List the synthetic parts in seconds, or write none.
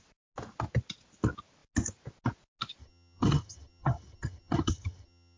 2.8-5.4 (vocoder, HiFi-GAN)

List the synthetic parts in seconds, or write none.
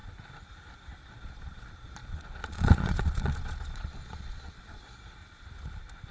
1.0-5.2 (vocoder, Vocos)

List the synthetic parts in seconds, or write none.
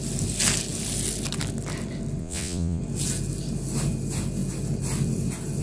2.2-2.8 (vocoder, Vocos)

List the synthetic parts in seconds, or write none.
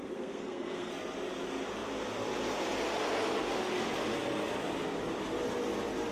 0.0-0.9 (codec, SNAC)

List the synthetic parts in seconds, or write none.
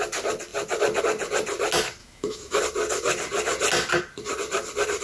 2.0-2.6 (autoencoder, DAC-VAE)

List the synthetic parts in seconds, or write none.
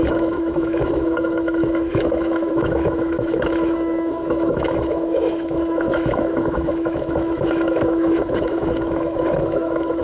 0.0-10.0 (autoencoder, DAC-VAE)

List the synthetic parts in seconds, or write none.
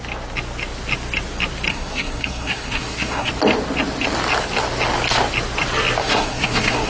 1.7-3.3 (codec, SNAC); 6.0-6.9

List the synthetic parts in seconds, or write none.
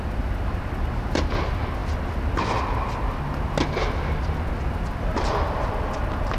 none